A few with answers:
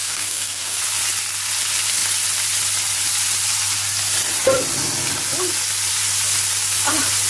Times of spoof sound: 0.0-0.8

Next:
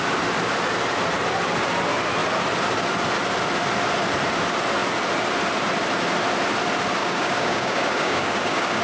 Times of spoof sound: 7.0-8.8

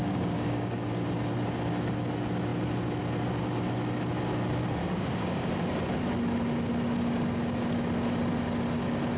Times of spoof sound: 0.0-0.9; 4.8-5.5

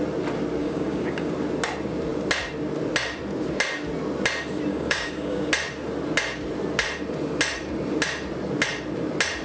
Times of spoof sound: 0.6-1.3; 4.7-5.5

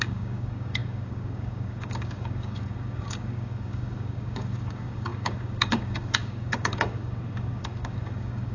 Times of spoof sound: 0.0-8.5

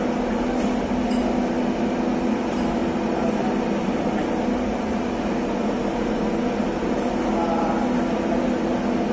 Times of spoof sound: none

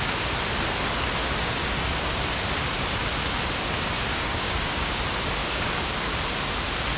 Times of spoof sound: 1.2-1.7; 4.1-5.0; 5.4-6.2

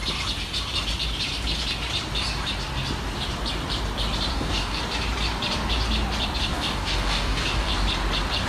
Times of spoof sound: 4.3-4.8; 6.5-7.7